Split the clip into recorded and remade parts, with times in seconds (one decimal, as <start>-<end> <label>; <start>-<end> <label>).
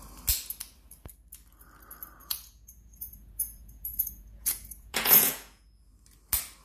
0.0-2.2 recorded; 2.2-5.9 remade; 5.9-6.6 recorded